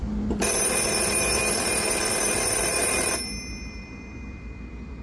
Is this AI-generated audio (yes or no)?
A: yes